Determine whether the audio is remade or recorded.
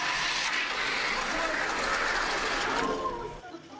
recorded